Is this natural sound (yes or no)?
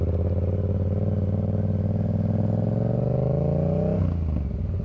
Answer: yes